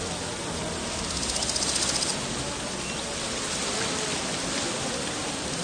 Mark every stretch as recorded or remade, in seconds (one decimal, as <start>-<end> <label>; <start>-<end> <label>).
0.0-5.6 recorded